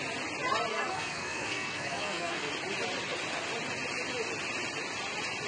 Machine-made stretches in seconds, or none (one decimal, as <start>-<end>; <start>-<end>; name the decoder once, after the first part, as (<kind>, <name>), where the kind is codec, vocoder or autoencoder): 0.7-2.5 (codec, SNAC)